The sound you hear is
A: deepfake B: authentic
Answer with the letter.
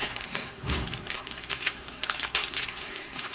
A